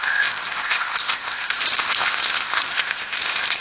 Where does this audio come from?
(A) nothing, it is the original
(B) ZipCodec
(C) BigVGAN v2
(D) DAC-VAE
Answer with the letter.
B